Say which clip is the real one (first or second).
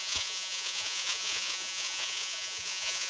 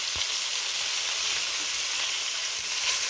second